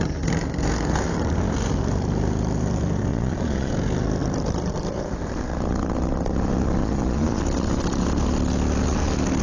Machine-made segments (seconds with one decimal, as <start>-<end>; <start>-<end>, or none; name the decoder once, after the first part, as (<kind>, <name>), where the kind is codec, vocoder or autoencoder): 3.1-3.7 (vocoder, Vocos); 6.8-7.4